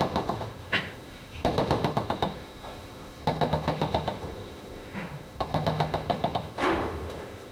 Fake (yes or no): yes